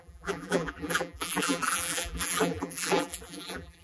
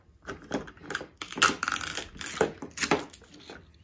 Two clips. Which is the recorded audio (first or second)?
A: second